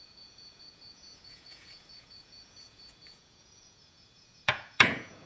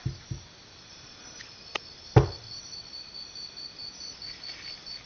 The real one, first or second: second